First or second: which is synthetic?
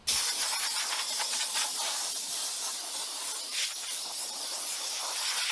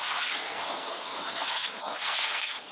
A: second